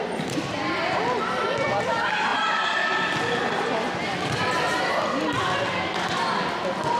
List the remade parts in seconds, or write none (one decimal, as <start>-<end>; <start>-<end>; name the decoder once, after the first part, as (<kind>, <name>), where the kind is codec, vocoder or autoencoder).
none